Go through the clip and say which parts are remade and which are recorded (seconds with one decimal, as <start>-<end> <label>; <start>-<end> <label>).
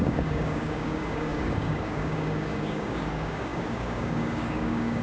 0.0-5.0 remade